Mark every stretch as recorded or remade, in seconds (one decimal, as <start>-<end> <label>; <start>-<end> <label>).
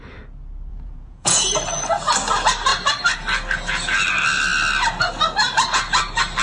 0.0-0.7 recorded; 0.7-1.5 remade; 1.5-6.4 recorded